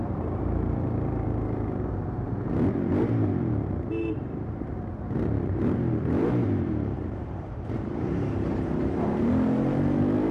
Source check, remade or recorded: remade